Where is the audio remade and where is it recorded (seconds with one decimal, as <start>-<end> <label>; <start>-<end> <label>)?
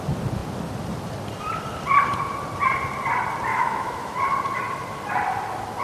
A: 0.0-3.5 recorded; 3.5-4.2 remade; 4.2-5.8 recorded